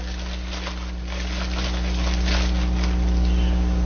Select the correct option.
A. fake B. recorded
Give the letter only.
B